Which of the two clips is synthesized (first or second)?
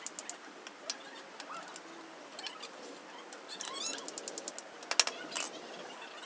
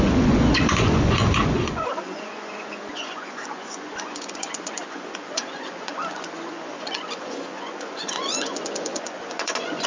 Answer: second